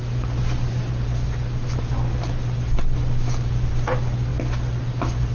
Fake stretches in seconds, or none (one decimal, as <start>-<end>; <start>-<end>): none